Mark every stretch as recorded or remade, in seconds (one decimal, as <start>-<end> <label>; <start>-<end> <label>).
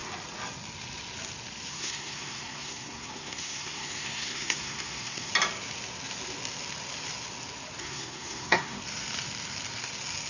0.0-1.7 recorded; 1.7-5.3 remade; 5.3-7.8 recorded; 7.8-8.8 remade; 8.8-10.3 recorded